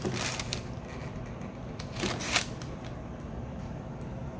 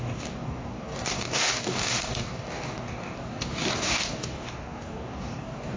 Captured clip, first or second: first